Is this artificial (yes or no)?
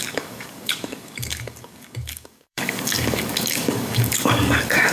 yes